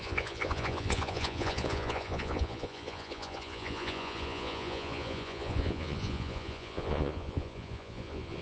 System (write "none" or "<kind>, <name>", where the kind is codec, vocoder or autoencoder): vocoder, Vocos